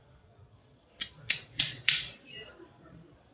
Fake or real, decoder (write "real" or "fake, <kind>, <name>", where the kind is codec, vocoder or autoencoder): fake, vocoder, Vocos